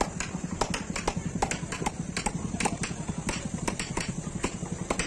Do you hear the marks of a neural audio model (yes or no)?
no